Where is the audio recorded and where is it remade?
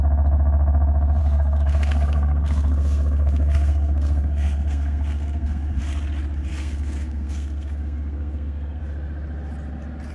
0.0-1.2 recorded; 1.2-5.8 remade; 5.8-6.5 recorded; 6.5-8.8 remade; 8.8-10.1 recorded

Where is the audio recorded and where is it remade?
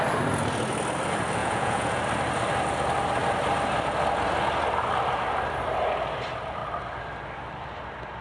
0.0-1.4 recorded; 1.4-2.0 remade; 2.0-8.2 recorded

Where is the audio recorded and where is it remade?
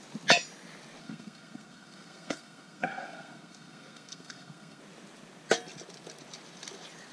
0.0-1.0 recorded; 1.0-4.8 remade; 4.8-7.1 recorded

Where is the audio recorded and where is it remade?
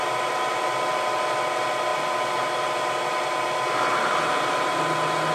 0.0-5.3 recorded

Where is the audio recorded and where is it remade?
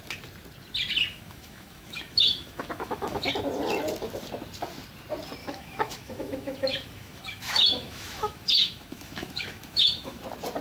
0.0-1.1 recorded; 1.1-3.3 remade; 3.3-5.4 recorded; 5.4-10.2 remade; 10.2-10.6 recorded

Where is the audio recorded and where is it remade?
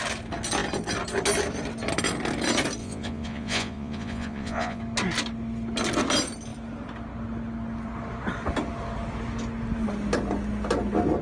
0.0-2.8 recorded; 2.8-4.8 remade; 4.8-11.2 recorded